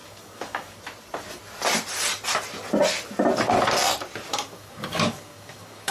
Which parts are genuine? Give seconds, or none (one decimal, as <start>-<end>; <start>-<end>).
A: 0.8-4.3